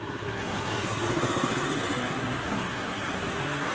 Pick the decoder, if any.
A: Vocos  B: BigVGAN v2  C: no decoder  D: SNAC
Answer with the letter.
D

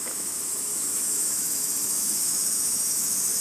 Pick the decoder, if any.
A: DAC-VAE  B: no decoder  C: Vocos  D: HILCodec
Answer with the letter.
A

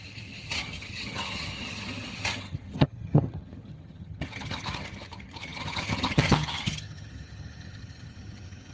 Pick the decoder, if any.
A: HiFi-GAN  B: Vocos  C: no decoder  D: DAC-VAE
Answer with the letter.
A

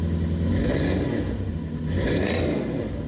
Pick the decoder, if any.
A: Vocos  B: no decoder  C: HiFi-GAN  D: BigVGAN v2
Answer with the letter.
B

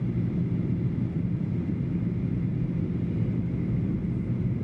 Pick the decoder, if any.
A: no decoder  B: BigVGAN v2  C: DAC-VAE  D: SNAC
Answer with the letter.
A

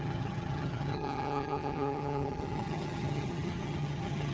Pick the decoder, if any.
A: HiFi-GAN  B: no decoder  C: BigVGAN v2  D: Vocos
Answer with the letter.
A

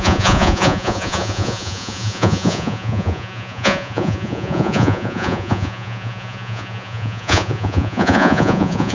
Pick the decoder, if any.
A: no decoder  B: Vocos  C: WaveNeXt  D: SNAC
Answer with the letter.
B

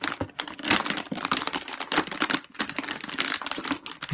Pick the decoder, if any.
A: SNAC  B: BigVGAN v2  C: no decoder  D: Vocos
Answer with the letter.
C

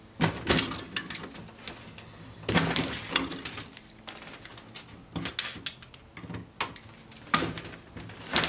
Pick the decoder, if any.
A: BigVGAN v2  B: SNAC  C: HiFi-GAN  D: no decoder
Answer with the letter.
D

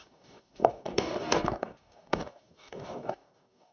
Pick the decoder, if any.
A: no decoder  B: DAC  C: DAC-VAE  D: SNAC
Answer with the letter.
B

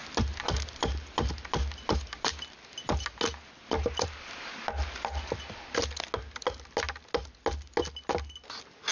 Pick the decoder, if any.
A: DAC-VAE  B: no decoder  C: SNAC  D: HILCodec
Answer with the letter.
B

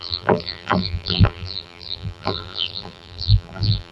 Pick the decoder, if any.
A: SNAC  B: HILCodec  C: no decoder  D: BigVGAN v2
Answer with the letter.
D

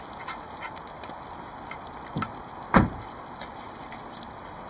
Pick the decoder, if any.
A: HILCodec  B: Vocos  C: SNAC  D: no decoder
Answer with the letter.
D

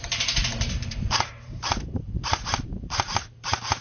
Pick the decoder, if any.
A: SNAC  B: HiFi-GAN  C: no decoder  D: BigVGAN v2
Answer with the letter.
D